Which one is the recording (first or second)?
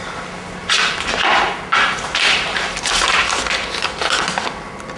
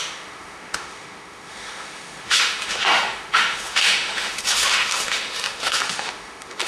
first